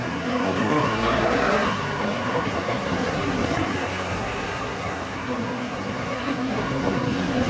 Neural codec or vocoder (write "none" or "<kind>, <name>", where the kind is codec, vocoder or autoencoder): codec, SNAC